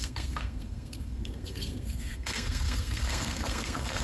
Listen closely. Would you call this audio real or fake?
fake